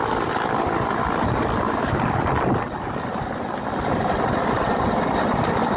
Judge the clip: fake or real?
real